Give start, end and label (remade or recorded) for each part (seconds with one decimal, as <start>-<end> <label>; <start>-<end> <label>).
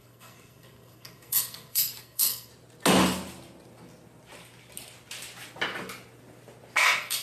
0.0-2.5 remade; 2.5-6.8 recorded; 6.8-7.2 remade